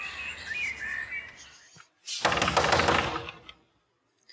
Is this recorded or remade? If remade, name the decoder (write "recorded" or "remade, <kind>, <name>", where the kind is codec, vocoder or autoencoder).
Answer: recorded